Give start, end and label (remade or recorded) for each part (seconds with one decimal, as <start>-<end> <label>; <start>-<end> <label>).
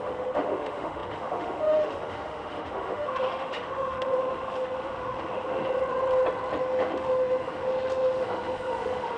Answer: 0.0-5.6 remade; 5.6-6.6 recorded; 6.6-9.2 remade